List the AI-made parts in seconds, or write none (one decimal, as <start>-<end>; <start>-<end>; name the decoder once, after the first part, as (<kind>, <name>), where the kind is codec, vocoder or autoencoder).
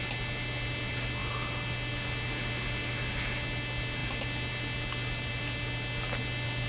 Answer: none